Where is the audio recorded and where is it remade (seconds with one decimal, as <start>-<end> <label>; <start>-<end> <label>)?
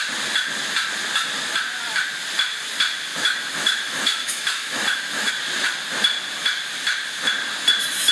0.0-3.1 recorded; 3.1-5.3 remade; 5.3-8.1 recorded